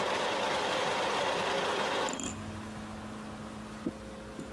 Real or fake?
real